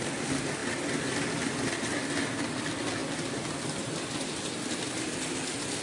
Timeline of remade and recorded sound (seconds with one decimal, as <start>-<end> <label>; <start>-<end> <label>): 0.0-5.8 recorded

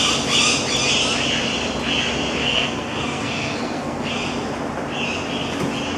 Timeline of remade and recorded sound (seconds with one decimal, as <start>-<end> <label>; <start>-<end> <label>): 0.0-2.4 recorded; 2.4-4.1 remade; 4.1-6.0 recorded

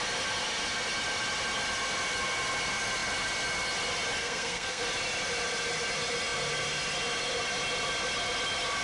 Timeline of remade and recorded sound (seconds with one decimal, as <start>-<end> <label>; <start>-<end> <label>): 0.0-4.2 recorded; 4.2-4.8 remade; 4.8-8.8 recorded

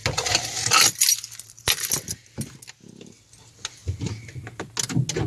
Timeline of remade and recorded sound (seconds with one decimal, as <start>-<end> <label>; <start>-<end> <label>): 0.0-5.3 recorded

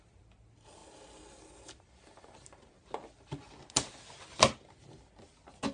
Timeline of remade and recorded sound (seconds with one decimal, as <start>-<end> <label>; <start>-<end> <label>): 0.0-5.7 recorded

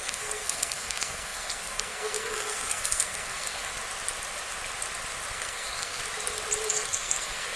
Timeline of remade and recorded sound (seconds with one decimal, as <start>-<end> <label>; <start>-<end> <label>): 0.0-3.7 remade; 3.7-5.3 recorded; 5.3-6.0 remade; 6.0-6.7 recorded; 6.7-7.6 remade

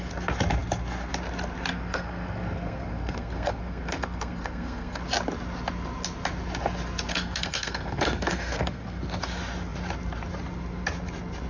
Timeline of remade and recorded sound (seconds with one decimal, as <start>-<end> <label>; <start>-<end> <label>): 0.0-1.7 recorded; 1.7-5.0 remade; 5.0-7.1 recorded; 7.1-9.0 remade; 9.0-11.5 recorded